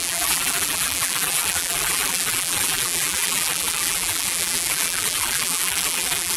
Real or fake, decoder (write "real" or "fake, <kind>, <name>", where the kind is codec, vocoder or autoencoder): fake, vocoder, BigVGAN v2